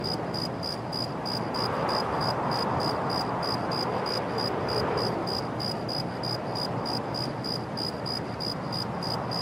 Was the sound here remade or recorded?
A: recorded